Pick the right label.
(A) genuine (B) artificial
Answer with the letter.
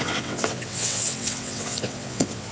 B